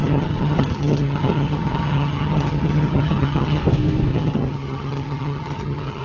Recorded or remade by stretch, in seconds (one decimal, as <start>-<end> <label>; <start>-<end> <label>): 0.0-3.6 remade; 3.6-4.1 recorded; 4.1-6.0 remade